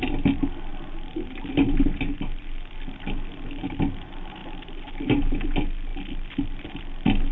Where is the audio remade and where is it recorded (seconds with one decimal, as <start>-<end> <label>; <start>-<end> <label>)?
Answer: 0.0-7.3 recorded